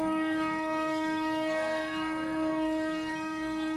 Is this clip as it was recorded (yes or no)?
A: no